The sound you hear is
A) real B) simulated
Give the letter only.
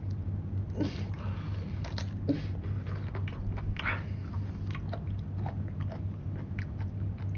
A